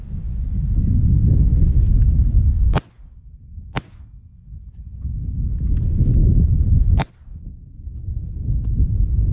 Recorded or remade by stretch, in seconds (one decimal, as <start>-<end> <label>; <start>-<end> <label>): 0.0-6.2 recorded; 6.2-7.1 remade; 7.1-9.3 recorded